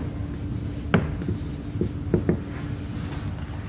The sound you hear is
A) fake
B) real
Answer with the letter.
B